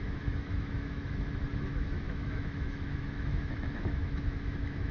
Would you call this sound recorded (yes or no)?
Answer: no